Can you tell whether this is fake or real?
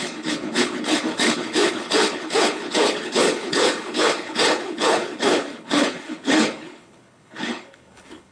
fake